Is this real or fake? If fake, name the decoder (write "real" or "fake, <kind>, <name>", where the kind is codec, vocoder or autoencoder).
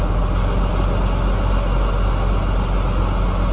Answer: real